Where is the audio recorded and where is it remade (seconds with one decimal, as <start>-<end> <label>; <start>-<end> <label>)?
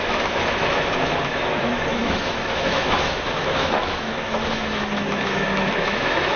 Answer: 0.0-6.4 remade